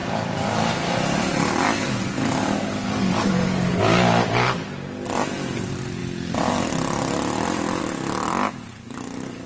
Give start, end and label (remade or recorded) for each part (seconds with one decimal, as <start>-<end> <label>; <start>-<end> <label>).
0.0-0.7 remade; 0.7-1.8 recorded; 1.8-3.8 remade; 3.8-8.8 recorded; 8.8-9.5 remade

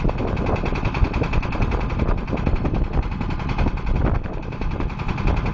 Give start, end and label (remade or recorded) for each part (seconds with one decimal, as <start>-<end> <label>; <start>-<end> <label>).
0.0-5.5 recorded

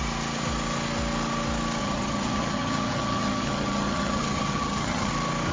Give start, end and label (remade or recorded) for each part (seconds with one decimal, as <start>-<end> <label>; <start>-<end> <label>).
0.0-1.8 recorded; 1.8-5.1 remade; 5.1-5.5 recorded

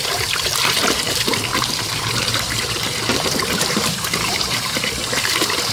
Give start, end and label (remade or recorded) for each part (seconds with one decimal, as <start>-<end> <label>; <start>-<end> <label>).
0.0-5.0 remade; 5.0-5.7 recorded